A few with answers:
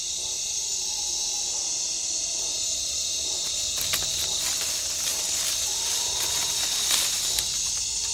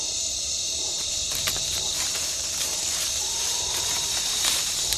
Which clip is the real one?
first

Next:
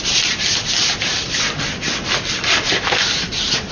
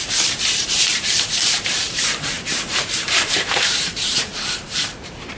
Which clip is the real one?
first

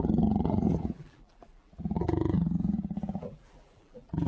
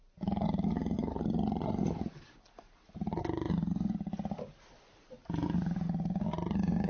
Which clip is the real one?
second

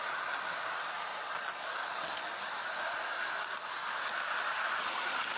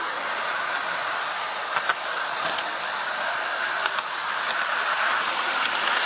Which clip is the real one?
first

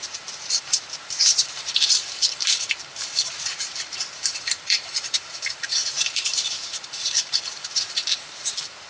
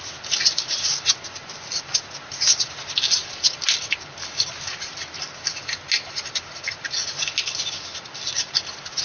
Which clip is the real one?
second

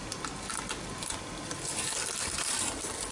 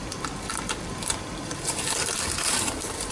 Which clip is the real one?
first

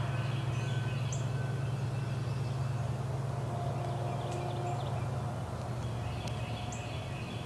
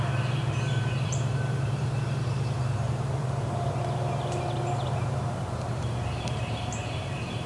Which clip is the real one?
first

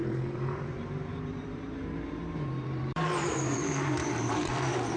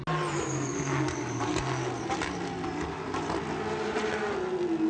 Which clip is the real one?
second